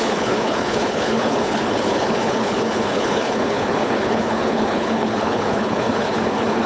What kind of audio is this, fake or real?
fake